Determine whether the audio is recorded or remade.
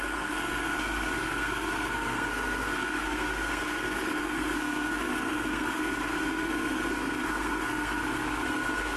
remade